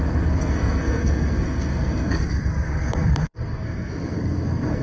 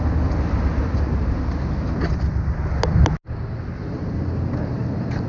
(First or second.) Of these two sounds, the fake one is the first